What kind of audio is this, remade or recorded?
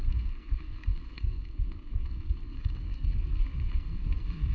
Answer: remade